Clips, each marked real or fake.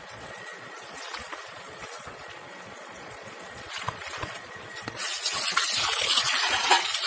fake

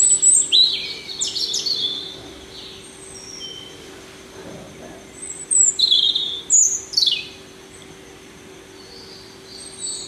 real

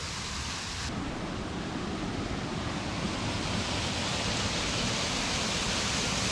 real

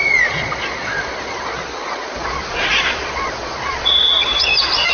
fake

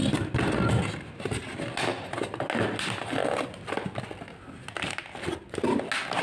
real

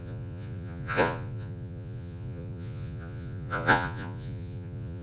fake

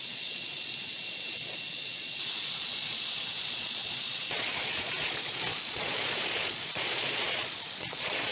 fake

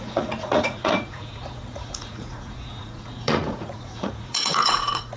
fake